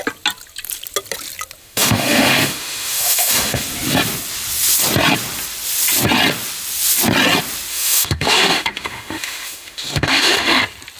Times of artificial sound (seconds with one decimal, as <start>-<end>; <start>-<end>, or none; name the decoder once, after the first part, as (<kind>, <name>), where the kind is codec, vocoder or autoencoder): 1.6-3.6 (autoencoder, DAC-VAE); 7.7-10.6